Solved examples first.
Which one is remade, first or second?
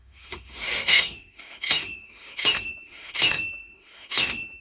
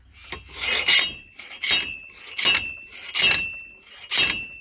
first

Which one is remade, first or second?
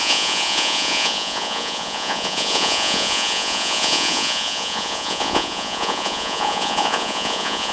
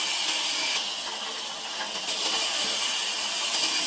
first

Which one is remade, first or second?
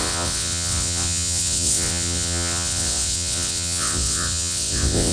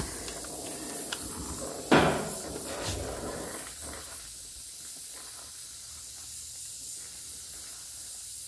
first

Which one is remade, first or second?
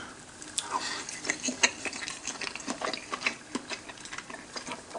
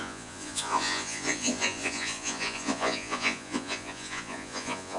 second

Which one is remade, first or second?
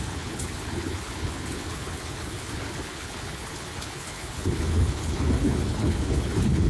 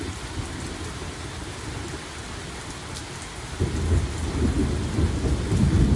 first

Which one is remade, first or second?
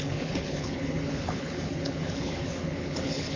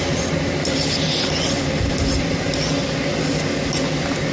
first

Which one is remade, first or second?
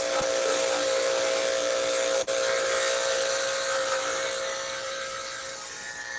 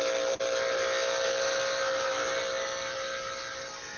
first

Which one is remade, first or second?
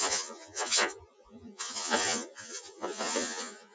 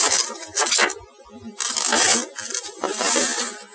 first